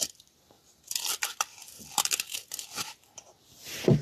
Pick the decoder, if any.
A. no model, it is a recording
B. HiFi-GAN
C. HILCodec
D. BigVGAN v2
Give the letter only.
D